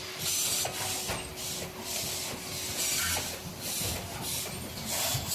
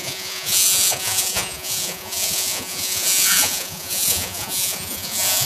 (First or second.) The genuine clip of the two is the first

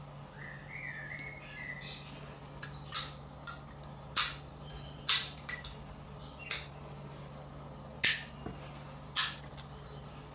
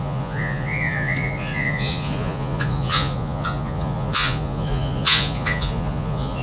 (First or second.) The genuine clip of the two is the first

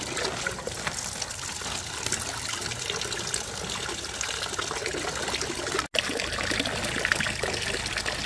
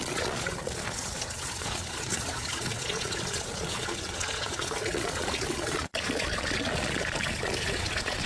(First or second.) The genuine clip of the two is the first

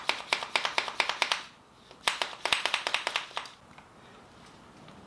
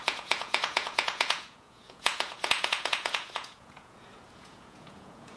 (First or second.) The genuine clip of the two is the first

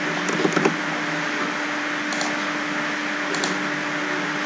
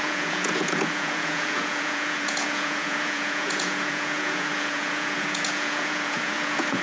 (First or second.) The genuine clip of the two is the first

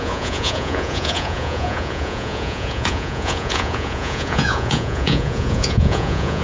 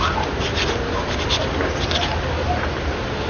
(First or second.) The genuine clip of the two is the second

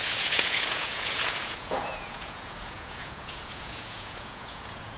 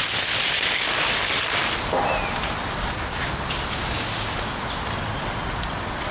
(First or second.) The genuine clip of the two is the second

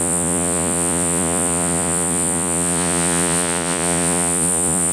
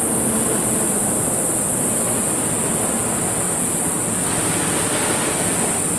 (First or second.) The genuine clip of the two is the second